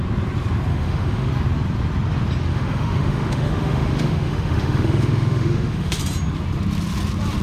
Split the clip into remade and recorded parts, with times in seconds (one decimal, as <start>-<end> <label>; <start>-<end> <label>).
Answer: 0.0-0.7 recorded; 0.7-1.3 remade; 1.3-2.5 recorded; 2.5-6.0 remade; 6.0-7.4 recorded

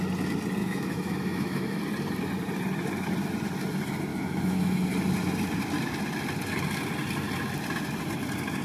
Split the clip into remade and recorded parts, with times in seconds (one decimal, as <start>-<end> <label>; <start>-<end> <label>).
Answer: 0.0-0.6 recorded; 0.6-1.8 remade; 1.8-4.1 recorded; 4.1-4.8 remade; 4.8-8.6 recorded